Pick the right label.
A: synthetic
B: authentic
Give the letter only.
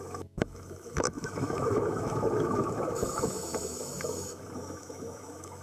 A